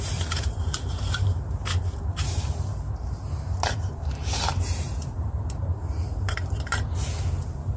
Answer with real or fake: fake